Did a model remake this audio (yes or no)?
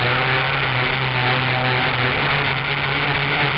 no